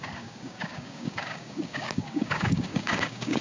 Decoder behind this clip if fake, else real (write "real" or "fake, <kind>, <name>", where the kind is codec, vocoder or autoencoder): fake, codec, DAC